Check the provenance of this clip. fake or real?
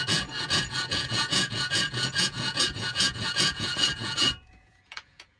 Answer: fake